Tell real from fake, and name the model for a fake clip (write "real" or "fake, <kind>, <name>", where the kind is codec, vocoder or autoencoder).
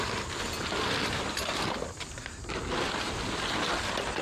real